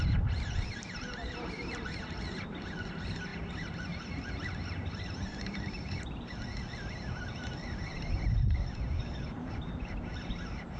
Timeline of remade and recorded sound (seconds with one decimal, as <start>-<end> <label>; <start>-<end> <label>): 0.0-5.3 recorded; 5.3-6.4 remade; 6.4-7.9 recorded; 7.9-9.0 remade; 9.0-10.8 recorded